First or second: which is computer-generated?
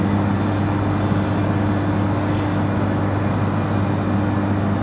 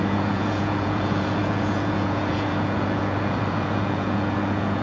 second